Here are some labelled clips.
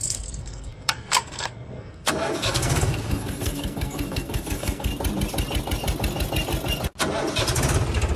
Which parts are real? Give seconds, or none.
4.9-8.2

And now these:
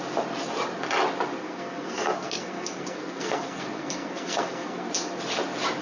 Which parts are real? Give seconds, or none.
0.0-1.4; 4.9-5.8

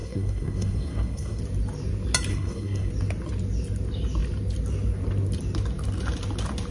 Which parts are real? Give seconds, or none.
1.4-2.3; 2.9-6.7

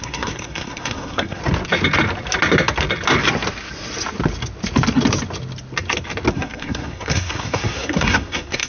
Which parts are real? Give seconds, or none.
1.4-6.3

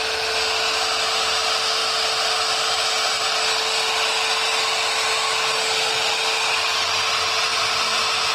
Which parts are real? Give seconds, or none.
0.0-8.3